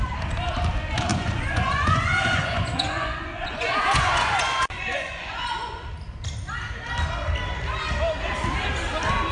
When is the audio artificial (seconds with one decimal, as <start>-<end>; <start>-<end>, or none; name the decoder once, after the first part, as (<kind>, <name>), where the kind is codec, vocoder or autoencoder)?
1.1-5.9 (vocoder, Vocos)